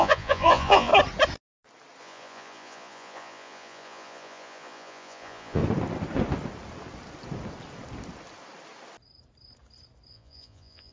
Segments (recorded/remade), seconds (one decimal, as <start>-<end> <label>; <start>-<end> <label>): 0.0-0.9 remade; 0.9-2.0 recorded; 2.0-5.6 remade; 5.6-10.1 recorded; 10.1-10.9 remade